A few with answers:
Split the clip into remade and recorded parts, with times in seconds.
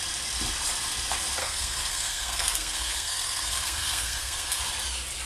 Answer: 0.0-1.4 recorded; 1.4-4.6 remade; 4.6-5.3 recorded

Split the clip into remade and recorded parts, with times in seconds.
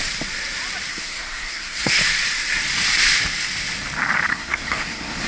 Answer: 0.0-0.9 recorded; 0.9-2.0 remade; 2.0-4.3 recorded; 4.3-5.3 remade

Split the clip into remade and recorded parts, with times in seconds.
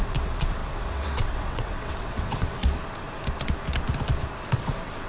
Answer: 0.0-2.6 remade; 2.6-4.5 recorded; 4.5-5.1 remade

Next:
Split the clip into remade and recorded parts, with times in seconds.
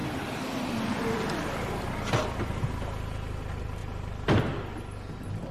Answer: 0.0-2.6 remade; 2.6-3.8 recorded; 3.8-4.4 remade; 4.4-5.5 recorded